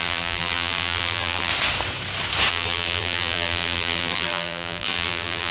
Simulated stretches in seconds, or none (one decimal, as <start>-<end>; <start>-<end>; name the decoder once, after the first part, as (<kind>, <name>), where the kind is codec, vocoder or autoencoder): 0.0-1.5 (vocoder, BigVGAN v2); 2.5-5.5